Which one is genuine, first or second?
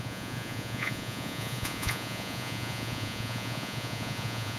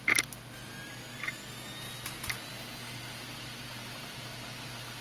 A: second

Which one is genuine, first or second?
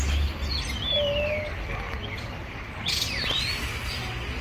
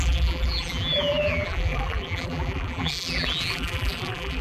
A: first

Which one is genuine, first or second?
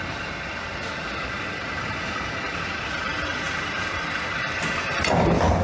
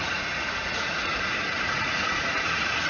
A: first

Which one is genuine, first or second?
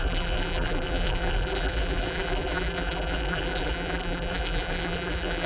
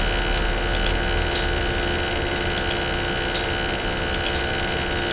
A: second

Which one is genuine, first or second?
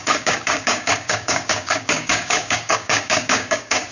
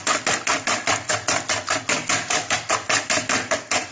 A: second